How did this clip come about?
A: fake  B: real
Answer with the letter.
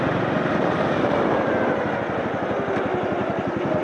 B